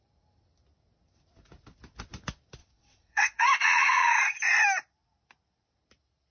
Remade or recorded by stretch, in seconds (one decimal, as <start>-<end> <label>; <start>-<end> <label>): 0.0-2.6 recorded; 2.6-4.1 remade; 4.1-6.3 recorded